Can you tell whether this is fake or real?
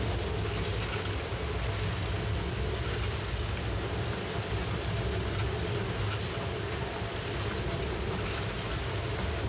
real